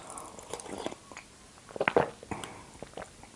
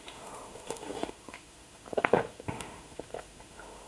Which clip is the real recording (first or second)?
first